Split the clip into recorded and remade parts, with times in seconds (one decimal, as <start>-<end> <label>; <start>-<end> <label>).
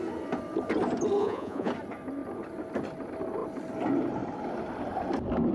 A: 0.0-1.2 recorded; 1.2-1.7 remade; 1.7-5.5 recorded